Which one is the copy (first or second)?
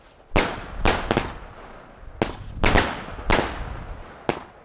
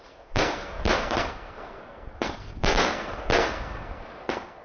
second